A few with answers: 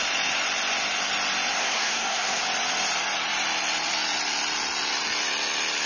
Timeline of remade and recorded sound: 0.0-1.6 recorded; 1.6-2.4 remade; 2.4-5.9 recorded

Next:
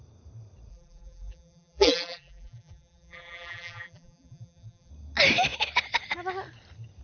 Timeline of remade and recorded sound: 0.0-0.7 recorded; 0.7-4.9 remade; 4.9-7.0 recorded

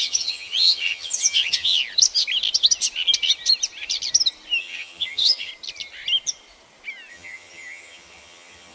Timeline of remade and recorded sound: 0.0-1.8 remade; 1.8-4.6 recorded; 4.6-5.5 remade; 5.5-7.1 recorded; 7.1-8.7 remade